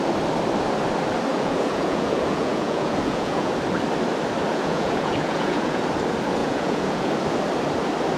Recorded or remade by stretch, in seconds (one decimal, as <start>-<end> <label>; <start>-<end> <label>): 0.0-1.3 recorded; 1.3-3.5 remade; 3.5-4.5 recorded; 4.5-5.8 remade; 5.8-6.4 recorded; 6.4-7.1 remade; 7.1-8.2 recorded